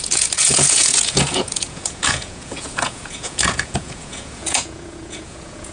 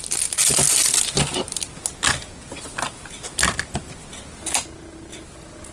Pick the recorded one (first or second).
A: second